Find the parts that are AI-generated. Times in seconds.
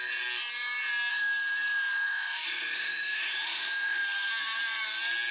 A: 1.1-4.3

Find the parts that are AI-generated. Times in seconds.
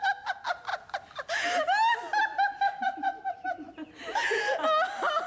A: none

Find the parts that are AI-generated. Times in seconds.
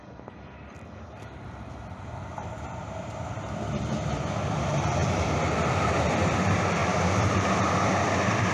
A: 0.0-8.5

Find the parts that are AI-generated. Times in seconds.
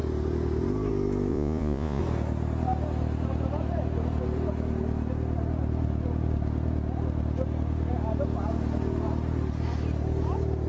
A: 1.3-2.0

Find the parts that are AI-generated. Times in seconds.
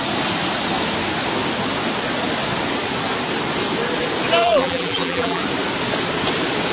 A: 4.4-5.4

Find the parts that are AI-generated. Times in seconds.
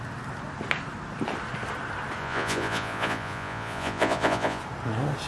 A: 2.2-4.6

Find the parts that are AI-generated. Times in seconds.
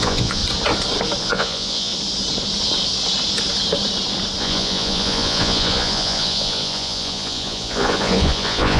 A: 0.0-0.4; 1.2-1.9; 4.4-8.8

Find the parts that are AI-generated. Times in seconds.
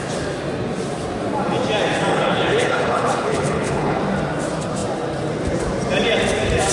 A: 2.1-4.0